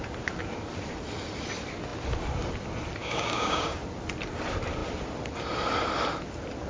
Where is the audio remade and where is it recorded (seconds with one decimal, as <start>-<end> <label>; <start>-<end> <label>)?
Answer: 0.0-3.0 recorded; 3.0-3.8 remade; 3.8-6.7 recorded